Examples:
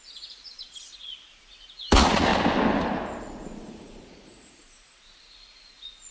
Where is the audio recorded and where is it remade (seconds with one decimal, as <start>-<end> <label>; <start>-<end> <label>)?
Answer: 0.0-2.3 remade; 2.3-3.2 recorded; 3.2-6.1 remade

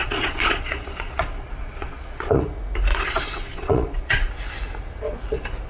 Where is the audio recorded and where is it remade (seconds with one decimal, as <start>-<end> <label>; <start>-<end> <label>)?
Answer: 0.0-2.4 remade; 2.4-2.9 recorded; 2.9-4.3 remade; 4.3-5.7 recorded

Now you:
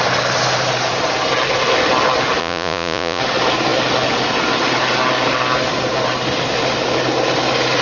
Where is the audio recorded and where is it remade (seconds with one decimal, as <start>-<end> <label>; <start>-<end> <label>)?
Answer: 0.0-2.4 recorded; 2.4-3.2 remade; 3.2-7.8 recorded